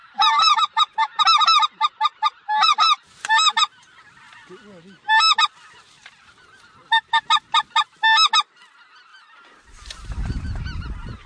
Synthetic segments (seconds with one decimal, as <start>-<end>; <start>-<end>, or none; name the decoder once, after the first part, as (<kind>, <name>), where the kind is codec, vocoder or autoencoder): 0.0-1.2 (vocoder, BigVGAN v2); 6.0-7.2; 9.1-10.6